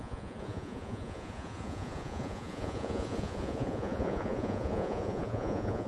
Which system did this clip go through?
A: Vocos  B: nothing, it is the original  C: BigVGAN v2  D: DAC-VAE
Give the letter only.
A